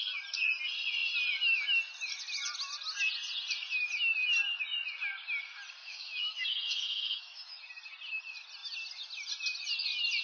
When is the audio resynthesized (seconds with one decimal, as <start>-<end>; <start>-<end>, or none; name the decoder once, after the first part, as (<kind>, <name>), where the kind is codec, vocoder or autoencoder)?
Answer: 5.8-7.6 (autoencoder, DAC-VAE)